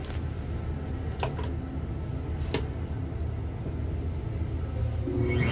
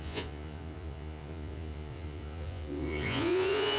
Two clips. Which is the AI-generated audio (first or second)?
second